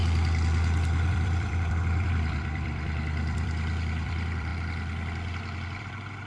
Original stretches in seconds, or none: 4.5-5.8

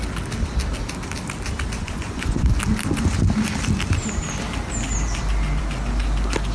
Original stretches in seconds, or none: 0.0-1.8; 2.5-6.5

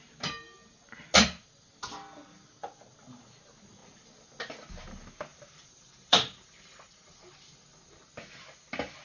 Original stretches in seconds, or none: 0.0-5.3; 7.2-9.0

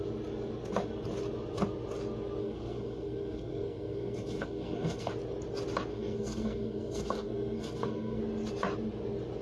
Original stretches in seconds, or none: 0.0-2.4; 5.1-5.9; 8.2-9.4